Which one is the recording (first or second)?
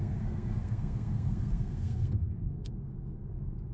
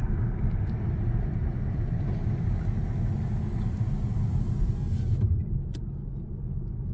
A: second